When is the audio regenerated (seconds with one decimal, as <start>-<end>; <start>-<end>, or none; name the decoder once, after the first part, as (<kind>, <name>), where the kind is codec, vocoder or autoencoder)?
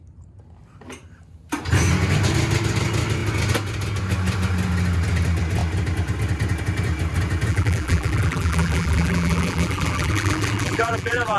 7.5-11.4 (vocoder, BigVGAN v2)